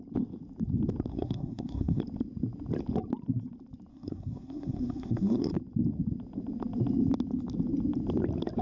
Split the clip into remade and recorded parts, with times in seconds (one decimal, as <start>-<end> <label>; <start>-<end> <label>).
0.0-1.1 recorded; 1.1-2.0 remade; 2.0-3.9 recorded; 3.9-5.5 remade; 5.5-8.6 recorded

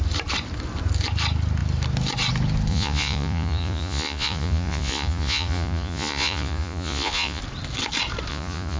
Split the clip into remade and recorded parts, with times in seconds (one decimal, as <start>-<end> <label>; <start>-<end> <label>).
0.0-2.7 recorded; 2.7-7.4 remade; 7.4-8.3 recorded; 8.3-8.8 remade

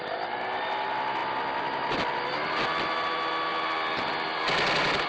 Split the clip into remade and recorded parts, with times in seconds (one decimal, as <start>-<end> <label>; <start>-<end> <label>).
0.0-5.1 recorded

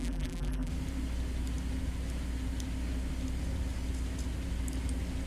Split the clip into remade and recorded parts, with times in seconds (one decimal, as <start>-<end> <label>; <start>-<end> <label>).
0.0-0.7 remade; 0.7-5.3 recorded